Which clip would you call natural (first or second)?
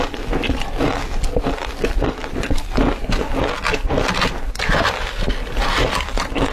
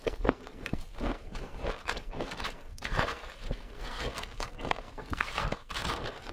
first